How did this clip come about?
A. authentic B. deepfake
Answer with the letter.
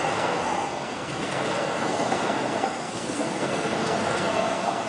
B